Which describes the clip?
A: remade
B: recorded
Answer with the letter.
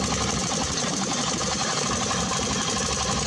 B